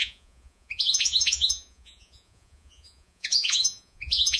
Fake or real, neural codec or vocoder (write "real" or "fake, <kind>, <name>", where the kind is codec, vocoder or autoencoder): fake, vocoder, Vocos